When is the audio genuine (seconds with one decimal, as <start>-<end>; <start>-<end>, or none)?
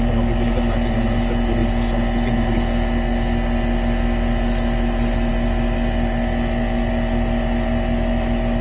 0.0-8.6